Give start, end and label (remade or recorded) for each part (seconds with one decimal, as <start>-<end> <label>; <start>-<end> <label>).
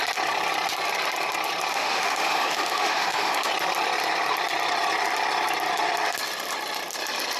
0.0-1.7 recorded; 1.7-3.5 remade; 3.5-7.4 recorded